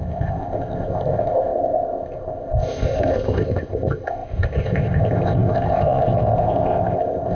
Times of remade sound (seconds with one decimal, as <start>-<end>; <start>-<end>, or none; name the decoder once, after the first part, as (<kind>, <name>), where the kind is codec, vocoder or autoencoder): 0.0-7.3 (codec, ZipCodec)